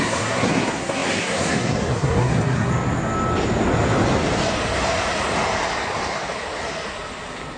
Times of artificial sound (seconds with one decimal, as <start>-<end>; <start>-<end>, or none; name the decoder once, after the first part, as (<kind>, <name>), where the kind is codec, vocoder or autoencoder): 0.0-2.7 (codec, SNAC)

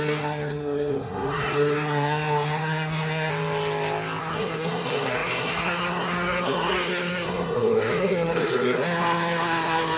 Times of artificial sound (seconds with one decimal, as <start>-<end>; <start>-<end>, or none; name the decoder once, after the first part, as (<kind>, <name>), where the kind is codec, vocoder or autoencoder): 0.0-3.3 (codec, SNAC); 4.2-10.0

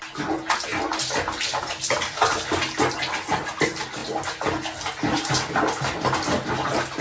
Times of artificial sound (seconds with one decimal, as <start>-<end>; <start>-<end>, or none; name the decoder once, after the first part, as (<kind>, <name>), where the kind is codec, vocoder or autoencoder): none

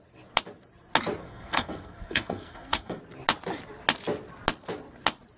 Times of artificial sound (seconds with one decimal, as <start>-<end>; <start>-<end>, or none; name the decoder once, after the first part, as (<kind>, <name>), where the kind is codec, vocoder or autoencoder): 1.2-3.0 (codec, SNAC)